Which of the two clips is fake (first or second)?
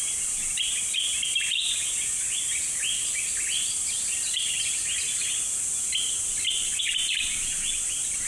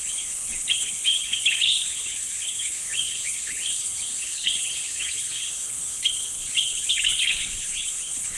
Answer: second